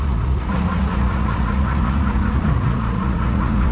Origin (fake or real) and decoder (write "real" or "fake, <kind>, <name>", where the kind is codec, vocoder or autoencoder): fake, vocoder, Vocos